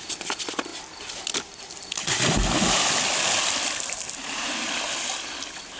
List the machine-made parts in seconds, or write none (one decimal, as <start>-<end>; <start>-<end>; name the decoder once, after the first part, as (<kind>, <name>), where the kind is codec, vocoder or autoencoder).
none